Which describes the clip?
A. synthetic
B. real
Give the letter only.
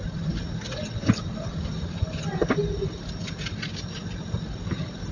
B